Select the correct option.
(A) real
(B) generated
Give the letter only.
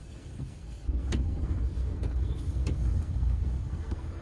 B